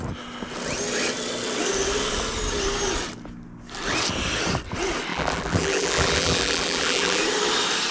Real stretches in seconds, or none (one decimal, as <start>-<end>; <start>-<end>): 0.0-5.1; 7.2-7.9